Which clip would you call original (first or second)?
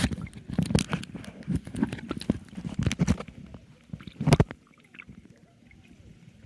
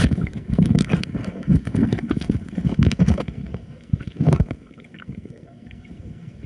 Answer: first